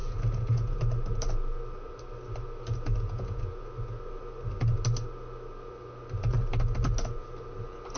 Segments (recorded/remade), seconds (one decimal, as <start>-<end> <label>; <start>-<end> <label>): 0.0-0.8 remade; 0.8-2.9 recorded; 2.9-3.6 remade; 3.6-8.0 recorded